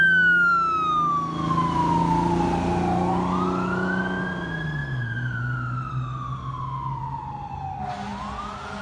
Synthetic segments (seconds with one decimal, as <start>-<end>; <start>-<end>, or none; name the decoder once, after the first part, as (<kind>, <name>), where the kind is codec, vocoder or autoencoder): none